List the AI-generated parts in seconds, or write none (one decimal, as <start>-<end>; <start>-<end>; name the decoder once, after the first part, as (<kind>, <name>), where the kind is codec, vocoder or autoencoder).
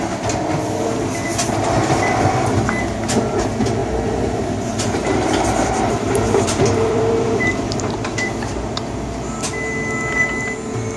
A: 3.8-8.7 (vocoder, BigVGAN v2)